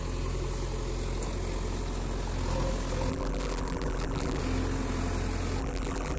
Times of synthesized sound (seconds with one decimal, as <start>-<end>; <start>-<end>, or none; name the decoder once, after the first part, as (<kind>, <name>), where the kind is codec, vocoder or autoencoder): 3.1-4.4 (vocoder, BigVGAN v2); 5.6-6.2